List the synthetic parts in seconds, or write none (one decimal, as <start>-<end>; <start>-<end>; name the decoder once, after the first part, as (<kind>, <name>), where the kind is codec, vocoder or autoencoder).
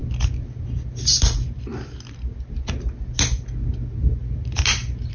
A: none